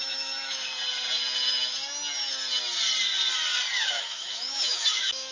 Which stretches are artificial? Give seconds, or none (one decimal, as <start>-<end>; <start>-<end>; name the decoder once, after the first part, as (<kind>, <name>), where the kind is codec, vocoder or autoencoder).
0.0-0.7 (autoencoder, DAC-VAE); 3.9-5.3